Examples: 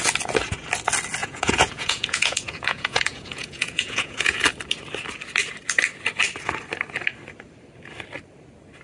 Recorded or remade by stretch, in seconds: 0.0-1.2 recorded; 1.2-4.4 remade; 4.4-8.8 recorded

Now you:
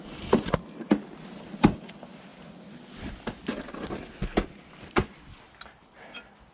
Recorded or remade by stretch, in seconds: 0.0-6.5 recorded